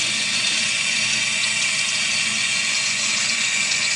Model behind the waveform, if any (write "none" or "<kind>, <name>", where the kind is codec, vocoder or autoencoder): vocoder, Vocos